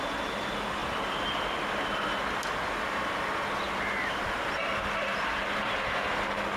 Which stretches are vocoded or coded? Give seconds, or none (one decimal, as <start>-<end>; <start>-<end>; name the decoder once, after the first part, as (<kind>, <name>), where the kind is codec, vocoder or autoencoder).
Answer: 0.8-1.8 (vocoder, BigVGAN v2)